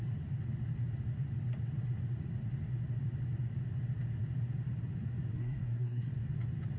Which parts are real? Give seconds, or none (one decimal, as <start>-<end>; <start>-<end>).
0.0-5.3; 6.1-6.8

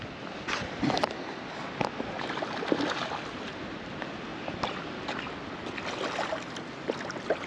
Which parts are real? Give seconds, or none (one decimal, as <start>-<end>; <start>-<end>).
0.0-7.5

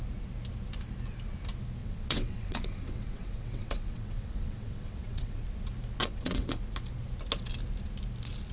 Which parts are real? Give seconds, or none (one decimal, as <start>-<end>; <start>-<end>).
0.0-1.8; 5.4-6.0; 6.6-8.5

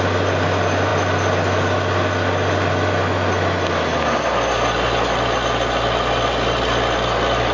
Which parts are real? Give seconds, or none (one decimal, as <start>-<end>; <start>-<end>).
0.0-7.5

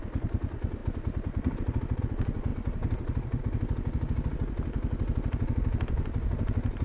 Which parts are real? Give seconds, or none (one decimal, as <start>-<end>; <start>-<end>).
0.0-0.8; 2.0-2.5; 3.4-6.8

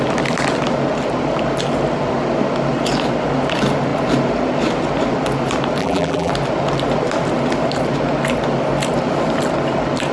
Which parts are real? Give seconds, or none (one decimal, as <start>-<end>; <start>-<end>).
0.0-5.8; 6.3-10.1

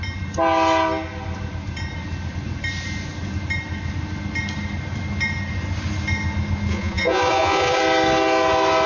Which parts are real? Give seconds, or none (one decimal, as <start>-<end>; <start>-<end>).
0.0-6.7; 7.8-8.9